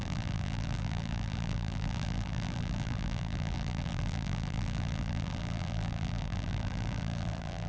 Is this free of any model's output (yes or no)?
no